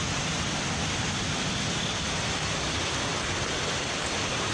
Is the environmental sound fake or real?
real